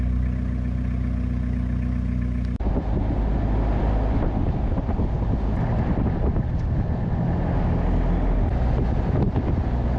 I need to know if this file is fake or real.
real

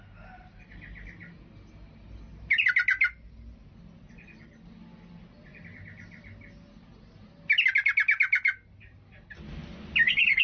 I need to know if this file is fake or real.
real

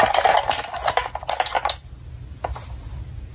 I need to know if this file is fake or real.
real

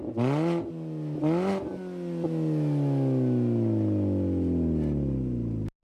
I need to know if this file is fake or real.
real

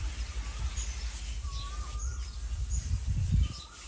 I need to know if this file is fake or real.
real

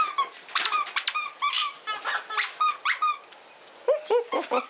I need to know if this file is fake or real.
real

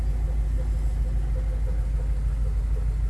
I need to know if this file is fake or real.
real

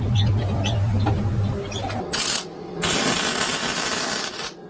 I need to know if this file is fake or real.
real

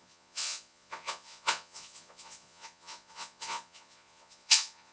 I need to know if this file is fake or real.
fake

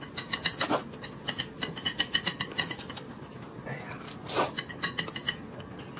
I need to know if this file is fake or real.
real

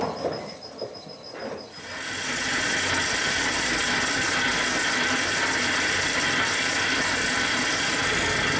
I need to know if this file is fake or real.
real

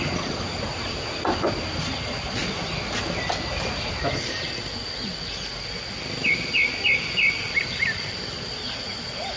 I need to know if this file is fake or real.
real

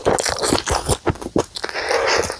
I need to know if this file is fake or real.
real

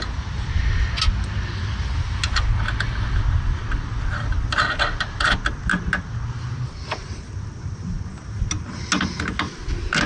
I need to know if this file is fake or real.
real